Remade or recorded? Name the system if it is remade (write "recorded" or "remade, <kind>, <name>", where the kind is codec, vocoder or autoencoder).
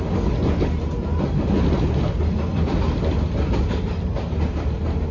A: recorded